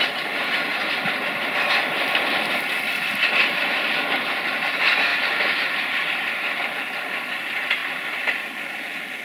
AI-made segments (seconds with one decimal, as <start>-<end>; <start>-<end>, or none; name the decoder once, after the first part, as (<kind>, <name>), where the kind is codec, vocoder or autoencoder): none